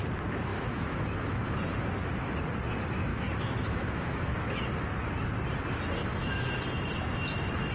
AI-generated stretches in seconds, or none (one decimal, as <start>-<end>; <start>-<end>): 0.5-1.6; 3.1-4.6; 6.0-6.6